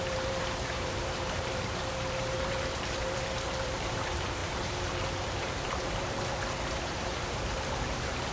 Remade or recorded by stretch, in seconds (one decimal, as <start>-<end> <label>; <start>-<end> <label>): 0.0-8.3 remade